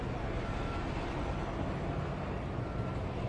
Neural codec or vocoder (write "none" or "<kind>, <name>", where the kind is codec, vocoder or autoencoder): none